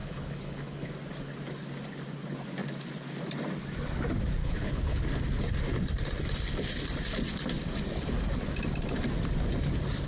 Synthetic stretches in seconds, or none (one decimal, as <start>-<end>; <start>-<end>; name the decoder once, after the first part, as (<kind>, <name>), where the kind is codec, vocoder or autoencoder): 0.0-0.9 (codec, HILCodec); 4.4-5.0